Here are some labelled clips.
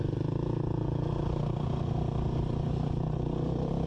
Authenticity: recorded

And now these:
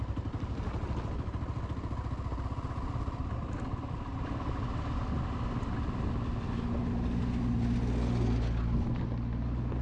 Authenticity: recorded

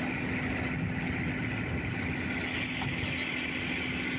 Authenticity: recorded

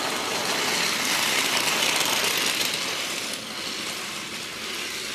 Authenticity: recorded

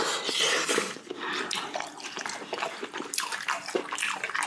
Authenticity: recorded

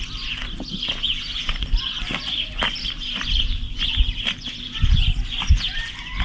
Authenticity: recorded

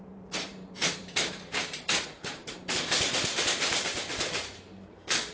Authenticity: remade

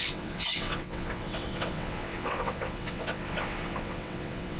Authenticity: remade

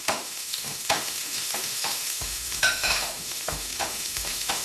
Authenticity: remade